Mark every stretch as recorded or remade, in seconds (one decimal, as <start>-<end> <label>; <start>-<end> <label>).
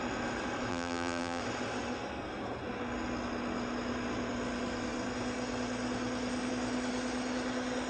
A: 0.0-0.7 recorded; 0.7-1.4 remade; 1.4-7.9 recorded